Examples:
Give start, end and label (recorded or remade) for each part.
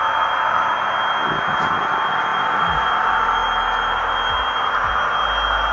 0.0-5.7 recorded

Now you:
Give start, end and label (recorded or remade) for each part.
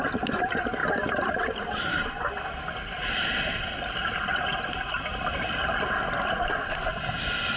0.0-7.6 recorded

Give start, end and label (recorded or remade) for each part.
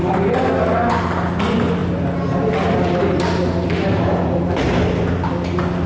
0.0-5.9 recorded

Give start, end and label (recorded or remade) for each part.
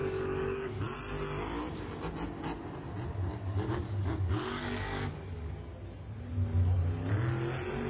0.0-0.8 remade; 0.8-3.3 recorded; 3.3-5.5 remade; 5.5-7.9 recorded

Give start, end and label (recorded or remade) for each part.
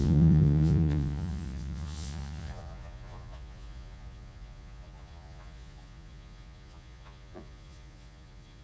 0.0-8.6 remade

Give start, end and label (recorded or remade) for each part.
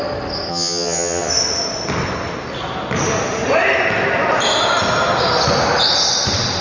0.0-0.5 recorded; 0.5-1.3 remade; 1.3-6.6 recorded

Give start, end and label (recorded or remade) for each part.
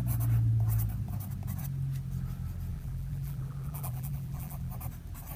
0.0-2.7 recorded; 2.7-4.7 remade; 4.7-5.4 recorded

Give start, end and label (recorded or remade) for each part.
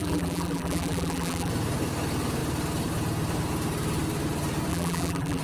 0.0-1.5 remade; 1.5-4.7 recorded; 4.7-5.4 remade